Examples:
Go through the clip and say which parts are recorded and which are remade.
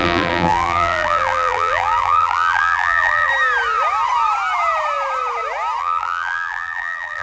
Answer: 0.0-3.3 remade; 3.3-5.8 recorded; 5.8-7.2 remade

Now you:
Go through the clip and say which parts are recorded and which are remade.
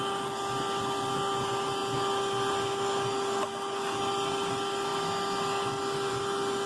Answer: 0.0-6.7 recorded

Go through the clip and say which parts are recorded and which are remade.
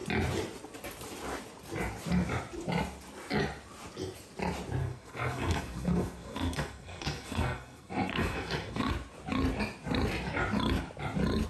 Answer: 0.0-4.8 recorded; 4.8-8.9 remade; 8.9-11.5 recorded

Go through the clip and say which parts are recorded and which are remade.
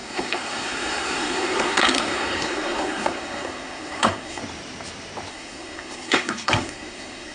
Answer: 0.0-4.4 remade; 4.4-5.3 recorded; 5.3-7.3 remade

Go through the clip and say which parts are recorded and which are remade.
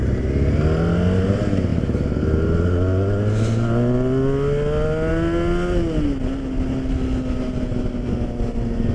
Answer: 0.0-8.9 recorded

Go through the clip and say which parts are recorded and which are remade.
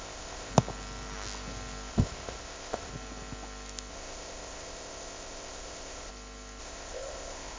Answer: 0.0-0.5 remade; 0.5-1.9 recorded; 1.9-2.9 remade; 2.9-3.9 recorded; 3.9-6.1 remade; 6.1-6.6 recorded; 6.6-7.6 remade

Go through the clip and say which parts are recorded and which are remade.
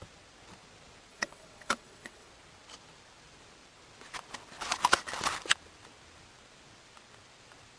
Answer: 0.0-1.1 recorded; 1.1-2.3 remade; 2.3-7.8 recorded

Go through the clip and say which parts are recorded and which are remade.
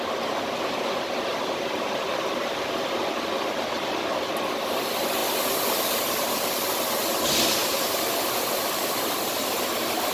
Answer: 0.0-2.1 recorded; 2.1-4.3 remade; 4.3-5.2 recorded; 5.2-5.8 remade; 5.8-7.6 recorded; 7.6-9.5 remade; 9.5-10.1 recorded